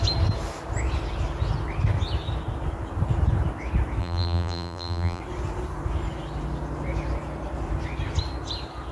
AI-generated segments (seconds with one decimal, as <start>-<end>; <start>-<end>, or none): 4.0-5.2